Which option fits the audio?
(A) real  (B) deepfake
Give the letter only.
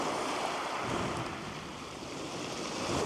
A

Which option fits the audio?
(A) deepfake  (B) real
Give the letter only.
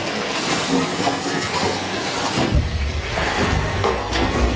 A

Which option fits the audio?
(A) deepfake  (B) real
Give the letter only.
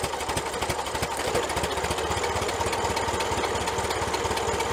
B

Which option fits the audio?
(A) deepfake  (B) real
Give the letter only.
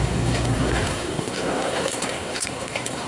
A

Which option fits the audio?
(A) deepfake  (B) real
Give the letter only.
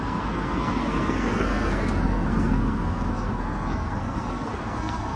A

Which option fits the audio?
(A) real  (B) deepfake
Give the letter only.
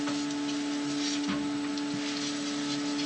A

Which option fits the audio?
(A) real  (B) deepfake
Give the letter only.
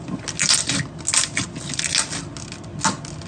A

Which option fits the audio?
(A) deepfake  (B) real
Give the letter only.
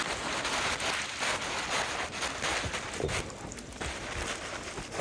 B